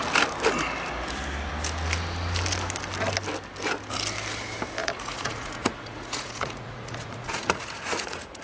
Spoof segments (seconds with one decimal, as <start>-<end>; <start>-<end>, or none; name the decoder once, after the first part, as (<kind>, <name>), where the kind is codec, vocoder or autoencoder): 4.8-8.4 (vocoder, Vocos)

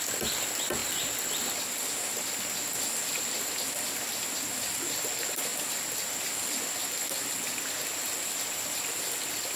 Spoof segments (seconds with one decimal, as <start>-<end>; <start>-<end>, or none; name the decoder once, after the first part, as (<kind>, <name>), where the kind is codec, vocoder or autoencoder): none

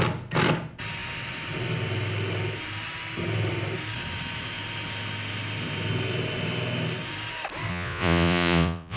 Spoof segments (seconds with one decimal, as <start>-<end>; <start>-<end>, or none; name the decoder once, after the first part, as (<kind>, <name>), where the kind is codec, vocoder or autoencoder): 7.7-9.0 (vocoder, Vocos)

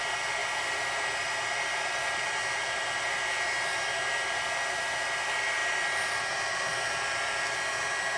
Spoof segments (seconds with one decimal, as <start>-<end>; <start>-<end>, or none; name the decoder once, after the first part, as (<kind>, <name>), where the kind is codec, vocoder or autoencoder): none

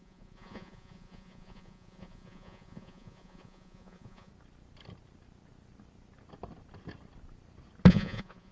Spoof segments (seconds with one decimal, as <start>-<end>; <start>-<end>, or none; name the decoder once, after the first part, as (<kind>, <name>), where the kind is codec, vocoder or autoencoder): 0.0-4.3 (vocoder, Vocos); 7.9-8.5

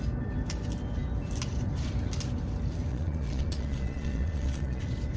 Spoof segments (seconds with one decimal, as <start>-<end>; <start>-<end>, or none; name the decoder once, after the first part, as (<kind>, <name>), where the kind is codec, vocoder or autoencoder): 2.9-4.8 (vocoder, Vocos)

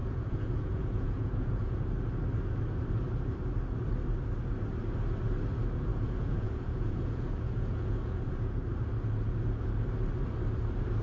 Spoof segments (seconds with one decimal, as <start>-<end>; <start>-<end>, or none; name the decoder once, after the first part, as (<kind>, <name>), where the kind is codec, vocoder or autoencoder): 0.0-1.8 (vocoder, Vocos); 5.9-8.6